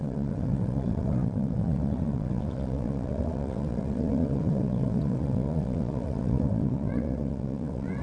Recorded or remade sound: remade